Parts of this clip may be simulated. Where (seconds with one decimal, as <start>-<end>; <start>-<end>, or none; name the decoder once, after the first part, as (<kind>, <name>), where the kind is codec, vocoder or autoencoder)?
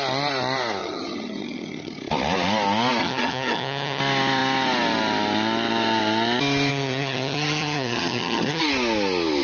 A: 0.8-2.0 (vocoder, HiFi-GAN); 3.0-4.0; 6.7-8.6